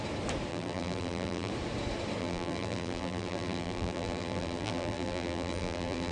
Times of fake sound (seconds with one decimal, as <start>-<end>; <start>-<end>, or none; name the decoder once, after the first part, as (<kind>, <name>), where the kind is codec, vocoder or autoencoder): 0.5-1.5 (vocoder, BigVGAN v2); 2.2-6.1